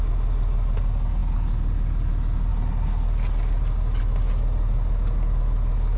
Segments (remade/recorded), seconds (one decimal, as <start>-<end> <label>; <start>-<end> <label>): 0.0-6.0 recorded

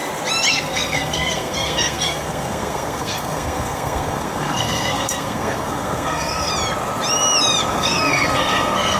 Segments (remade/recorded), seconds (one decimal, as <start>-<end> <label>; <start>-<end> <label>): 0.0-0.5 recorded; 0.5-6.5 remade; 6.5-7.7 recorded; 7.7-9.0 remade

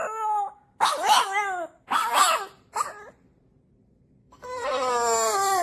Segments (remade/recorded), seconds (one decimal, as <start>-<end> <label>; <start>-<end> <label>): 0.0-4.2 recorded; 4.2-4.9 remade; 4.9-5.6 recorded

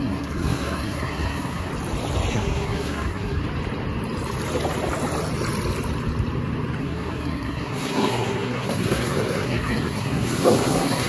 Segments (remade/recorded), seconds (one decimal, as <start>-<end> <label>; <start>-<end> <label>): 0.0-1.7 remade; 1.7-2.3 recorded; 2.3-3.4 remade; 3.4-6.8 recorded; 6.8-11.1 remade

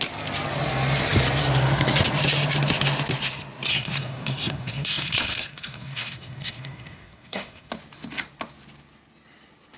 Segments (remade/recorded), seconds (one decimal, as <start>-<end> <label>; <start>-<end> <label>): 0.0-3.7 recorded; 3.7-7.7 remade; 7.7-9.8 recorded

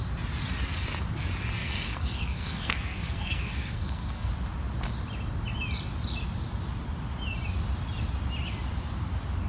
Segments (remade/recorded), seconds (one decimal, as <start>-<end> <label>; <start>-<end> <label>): 0.0-1.6 recorded; 1.6-4.3 remade; 4.3-9.5 recorded

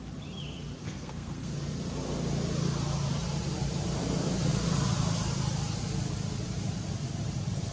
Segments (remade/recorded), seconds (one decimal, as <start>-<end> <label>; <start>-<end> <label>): 0.0-0.8 recorded; 0.8-1.5 remade; 1.5-7.7 recorded

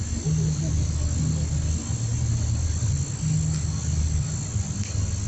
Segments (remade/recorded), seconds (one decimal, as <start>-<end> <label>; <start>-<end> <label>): 0.0-5.3 recorded